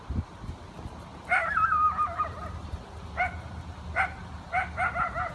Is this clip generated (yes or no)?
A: no